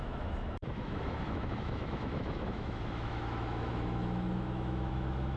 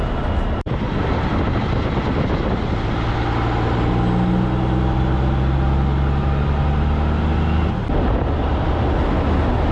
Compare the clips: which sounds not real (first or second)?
first